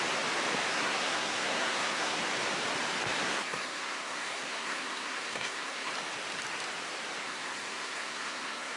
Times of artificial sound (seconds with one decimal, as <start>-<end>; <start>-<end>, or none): 0.7-2.2; 3.2-5.9; 7.2-8.8